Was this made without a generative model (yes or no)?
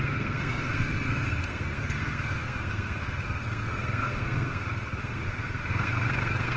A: no